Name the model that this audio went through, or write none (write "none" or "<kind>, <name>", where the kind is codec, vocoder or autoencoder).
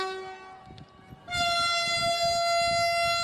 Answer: none